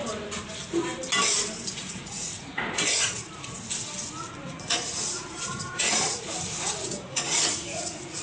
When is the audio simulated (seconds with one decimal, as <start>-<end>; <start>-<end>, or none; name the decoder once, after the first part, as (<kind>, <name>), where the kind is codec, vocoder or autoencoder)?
1.8-3.6 (vocoder, Vocos); 4.4-8.2